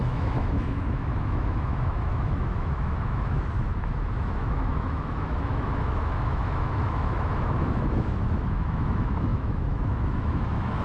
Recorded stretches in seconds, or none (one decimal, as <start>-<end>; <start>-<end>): none